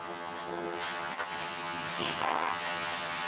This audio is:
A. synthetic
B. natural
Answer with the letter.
A